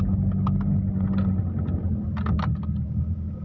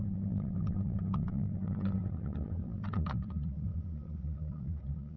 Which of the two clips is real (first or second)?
first